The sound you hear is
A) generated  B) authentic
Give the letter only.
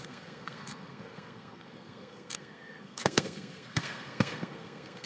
A